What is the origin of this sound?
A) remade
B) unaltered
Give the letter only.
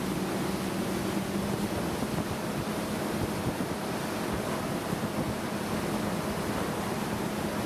B